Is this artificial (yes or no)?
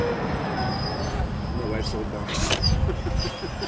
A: no